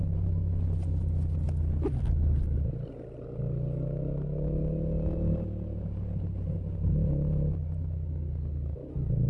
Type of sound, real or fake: real